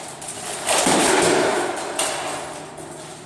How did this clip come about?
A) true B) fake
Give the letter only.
A